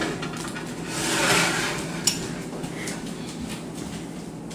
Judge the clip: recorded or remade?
recorded